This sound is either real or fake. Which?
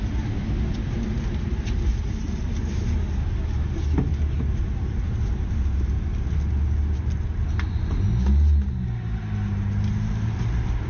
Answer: real